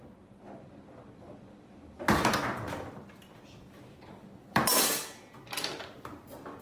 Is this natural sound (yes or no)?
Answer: no